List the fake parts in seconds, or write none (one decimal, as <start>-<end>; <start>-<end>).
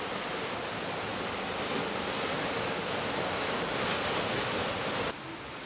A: none